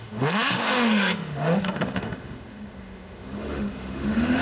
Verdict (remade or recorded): remade